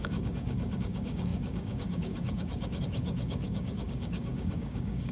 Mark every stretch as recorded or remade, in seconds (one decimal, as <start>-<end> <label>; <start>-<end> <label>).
0.0-5.1 remade